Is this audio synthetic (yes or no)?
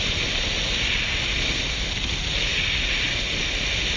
no